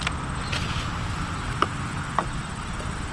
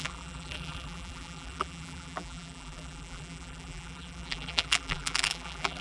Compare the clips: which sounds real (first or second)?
first